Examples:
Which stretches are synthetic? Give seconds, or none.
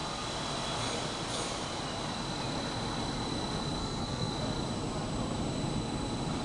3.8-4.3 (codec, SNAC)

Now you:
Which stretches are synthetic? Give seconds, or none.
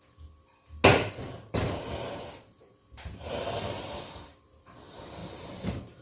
0.9-2.8 (vocoder, BigVGAN v2); 5.2-6.0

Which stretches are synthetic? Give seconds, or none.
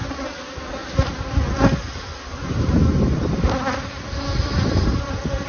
none